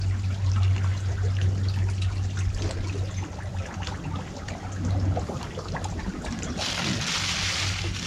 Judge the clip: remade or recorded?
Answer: recorded